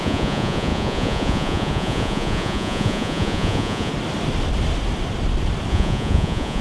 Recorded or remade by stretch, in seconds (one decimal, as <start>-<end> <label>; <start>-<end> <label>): 0.0-3.9 remade; 3.9-5.7 recorded; 5.7-6.6 remade